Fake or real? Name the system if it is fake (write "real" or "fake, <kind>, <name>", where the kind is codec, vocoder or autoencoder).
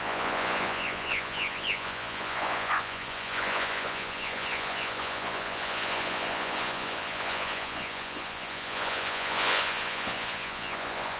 fake, vocoder, Vocos